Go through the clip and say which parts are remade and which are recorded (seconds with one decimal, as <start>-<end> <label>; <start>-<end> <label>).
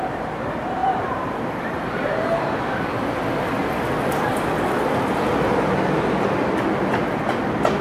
0.0-0.8 recorded; 0.8-2.8 remade; 2.8-7.8 recorded